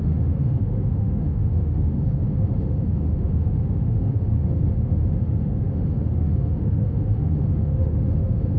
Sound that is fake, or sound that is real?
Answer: fake